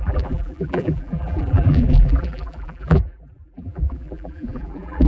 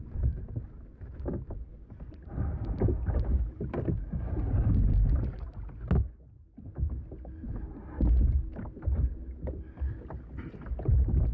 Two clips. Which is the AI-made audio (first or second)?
first